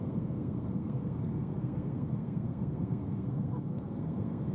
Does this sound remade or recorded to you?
remade